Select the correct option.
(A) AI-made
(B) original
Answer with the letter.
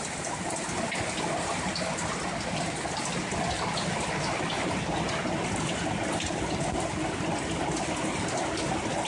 B